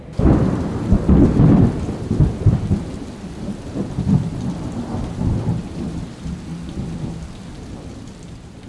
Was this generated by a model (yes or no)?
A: yes